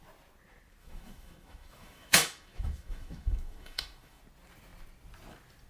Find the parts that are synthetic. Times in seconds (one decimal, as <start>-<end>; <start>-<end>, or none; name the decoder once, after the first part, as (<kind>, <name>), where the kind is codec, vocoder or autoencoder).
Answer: 0.8-4.2 (autoencoder, DAC-VAE)

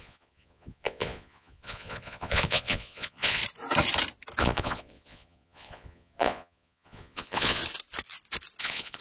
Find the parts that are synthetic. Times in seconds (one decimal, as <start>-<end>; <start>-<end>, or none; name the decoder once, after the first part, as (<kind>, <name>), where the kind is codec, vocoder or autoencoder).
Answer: 0.0-3.4 (vocoder, Vocos); 4.4-7.6; 8.6-9.0

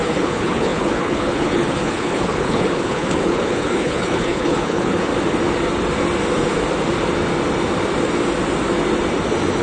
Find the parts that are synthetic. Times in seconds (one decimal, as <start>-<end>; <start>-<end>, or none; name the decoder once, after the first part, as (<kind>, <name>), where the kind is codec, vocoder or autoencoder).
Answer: 0.0-5.1 (codec, HILCodec)

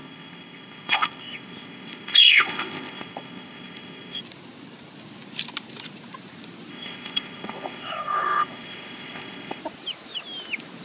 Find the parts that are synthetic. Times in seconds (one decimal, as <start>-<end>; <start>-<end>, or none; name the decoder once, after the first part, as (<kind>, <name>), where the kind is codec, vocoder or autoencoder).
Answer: 0.0-4.2 (codec, ZipCodec); 6.7-9.6

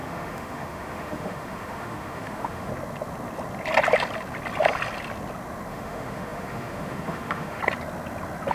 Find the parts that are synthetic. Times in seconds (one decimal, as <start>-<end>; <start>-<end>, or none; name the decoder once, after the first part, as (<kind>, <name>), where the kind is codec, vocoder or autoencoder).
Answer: 0.0-2.7 (autoencoder, DAC-VAE); 5.7-7.6

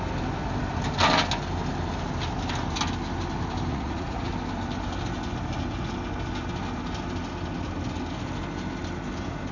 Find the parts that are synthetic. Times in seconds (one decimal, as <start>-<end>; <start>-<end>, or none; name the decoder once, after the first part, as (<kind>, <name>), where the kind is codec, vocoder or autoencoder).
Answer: 3.7-4.3 (vocoder, Vocos)

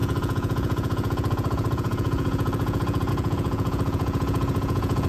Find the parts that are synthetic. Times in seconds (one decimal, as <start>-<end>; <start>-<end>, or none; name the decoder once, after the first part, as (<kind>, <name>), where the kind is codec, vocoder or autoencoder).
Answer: 0.0-5.1 (vocoder, Vocos)